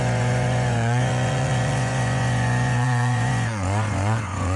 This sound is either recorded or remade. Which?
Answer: remade